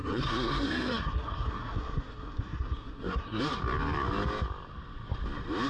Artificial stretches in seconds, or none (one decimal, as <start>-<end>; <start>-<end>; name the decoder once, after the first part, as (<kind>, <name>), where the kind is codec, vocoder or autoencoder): 0.0-3.4 (codec, SNAC)